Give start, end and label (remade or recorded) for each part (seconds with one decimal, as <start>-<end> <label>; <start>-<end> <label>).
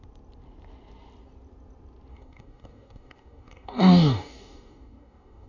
0.0-2.1 recorded; 2.1-5.5 remade